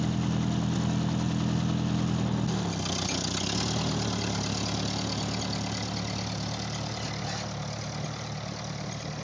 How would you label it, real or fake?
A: real